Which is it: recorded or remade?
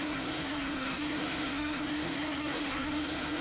remade